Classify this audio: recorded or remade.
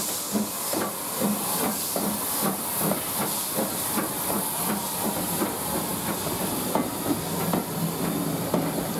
recorded